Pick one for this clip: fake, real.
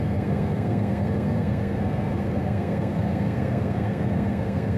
fake